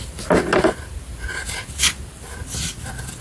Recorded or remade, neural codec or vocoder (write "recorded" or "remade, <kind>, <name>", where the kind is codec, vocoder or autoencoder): recorded